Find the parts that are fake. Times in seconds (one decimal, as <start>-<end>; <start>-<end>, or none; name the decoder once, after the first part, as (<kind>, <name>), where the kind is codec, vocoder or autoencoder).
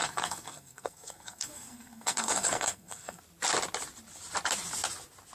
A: 0.0-3.2 (codec, SNAC)